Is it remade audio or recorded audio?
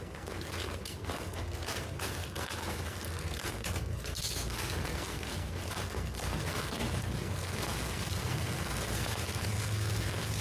remade